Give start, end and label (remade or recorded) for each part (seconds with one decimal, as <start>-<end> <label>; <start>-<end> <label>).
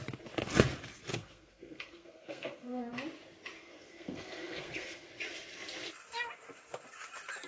0.0-1.1 recorded; 1.1-2.9 remade; 2.9-3.6 recorded; 3.6-5.1 remade; 5.1-7.5 recorded